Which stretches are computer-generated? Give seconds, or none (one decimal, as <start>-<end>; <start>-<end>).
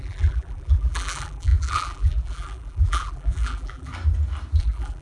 0.0-3.9; 4.6-5.0